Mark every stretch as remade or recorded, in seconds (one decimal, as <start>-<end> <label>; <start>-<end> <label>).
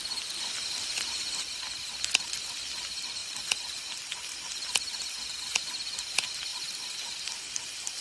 0.0-6.5 recorded; 6.5-7.0 remade; 7.0-8.0 recorded